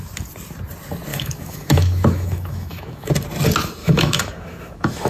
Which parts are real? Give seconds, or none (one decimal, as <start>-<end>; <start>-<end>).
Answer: 0.0-1.1; 3.1-3.8